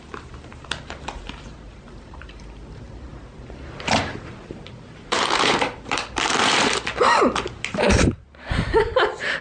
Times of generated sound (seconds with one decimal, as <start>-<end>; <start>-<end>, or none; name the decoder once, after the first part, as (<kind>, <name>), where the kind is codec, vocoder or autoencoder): 0.0-9.4 (vocoder, BigVGAN v2)